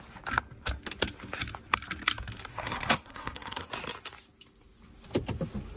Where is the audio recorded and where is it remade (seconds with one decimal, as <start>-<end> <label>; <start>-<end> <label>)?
0.0-2.5 recorded; 2.5-3.7 remade; 3.7-5.8 recorded